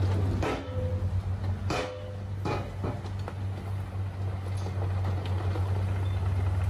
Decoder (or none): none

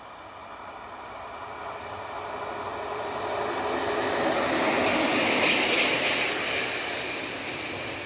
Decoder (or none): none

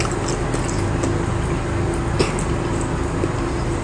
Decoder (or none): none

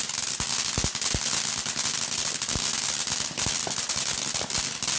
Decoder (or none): none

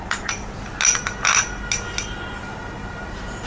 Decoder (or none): none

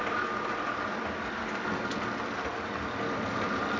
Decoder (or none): none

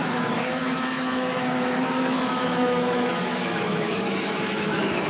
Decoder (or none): autoencoder, DAC-VAE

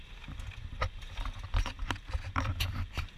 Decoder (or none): none